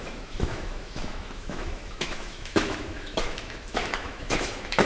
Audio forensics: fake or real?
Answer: fake